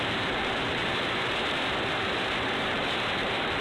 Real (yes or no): no